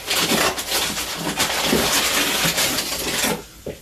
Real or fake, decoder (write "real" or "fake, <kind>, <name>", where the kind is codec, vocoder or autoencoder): real